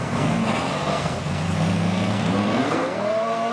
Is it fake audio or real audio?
fake